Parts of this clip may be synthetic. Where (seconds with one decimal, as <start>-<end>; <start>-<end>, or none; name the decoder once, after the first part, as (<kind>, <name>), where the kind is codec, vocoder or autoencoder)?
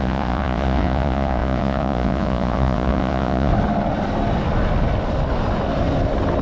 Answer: 0.0-3.5 (vocoder, Vocos)